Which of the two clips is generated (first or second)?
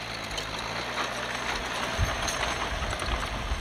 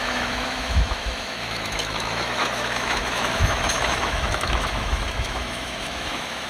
second